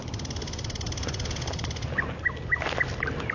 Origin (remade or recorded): recorded